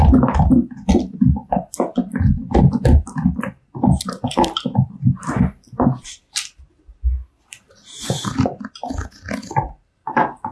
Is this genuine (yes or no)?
yes